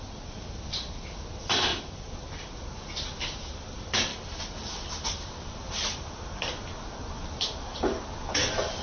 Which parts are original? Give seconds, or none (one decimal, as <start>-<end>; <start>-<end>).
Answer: 0.0-1.7; 2.5-4.1; 6.1-8.8